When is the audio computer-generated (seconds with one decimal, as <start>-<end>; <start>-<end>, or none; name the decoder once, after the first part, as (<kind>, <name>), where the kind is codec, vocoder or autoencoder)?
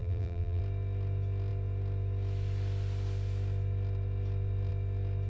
0.0-0.6 (vocoder, BigVGAN v2)